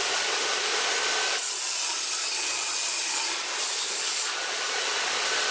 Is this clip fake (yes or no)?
no